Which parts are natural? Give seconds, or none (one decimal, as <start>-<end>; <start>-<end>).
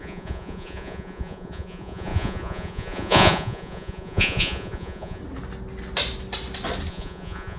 5.2-6.9